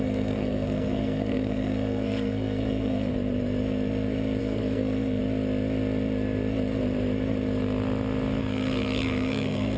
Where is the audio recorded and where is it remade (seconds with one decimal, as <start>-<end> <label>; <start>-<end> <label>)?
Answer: 0.0-3.1 remade; 3.1-4.4 recorded; 4.4-5.2 remade; 5.2-8.4 recorded; 8.4-9.8 remade